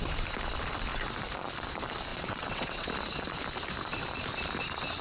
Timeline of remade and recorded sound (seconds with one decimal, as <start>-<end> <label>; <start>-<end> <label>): 0.0-2.1 recorded; 2.1-2.9 remade; 2.9-5.0 recorded